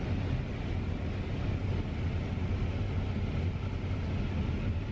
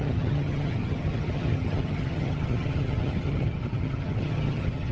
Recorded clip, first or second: first